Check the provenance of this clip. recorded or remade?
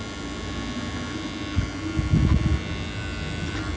recorded